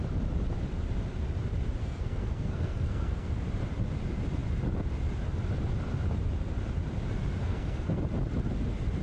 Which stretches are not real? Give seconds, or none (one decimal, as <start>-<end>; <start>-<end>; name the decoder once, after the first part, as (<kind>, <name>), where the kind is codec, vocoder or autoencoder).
1.8-3.3 (codec, SNAC); 7.4-8.0